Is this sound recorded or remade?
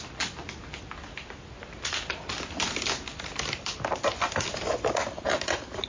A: recorded